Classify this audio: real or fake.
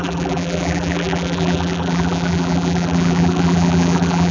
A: fake